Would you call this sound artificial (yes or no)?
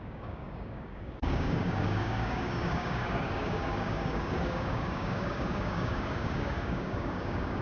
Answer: yes